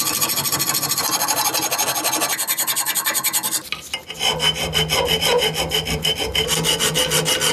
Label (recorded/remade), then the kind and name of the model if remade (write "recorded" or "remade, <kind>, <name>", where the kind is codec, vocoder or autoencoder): recorded